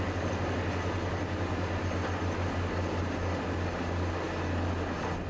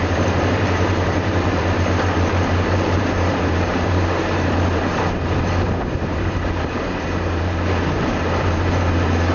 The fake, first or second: second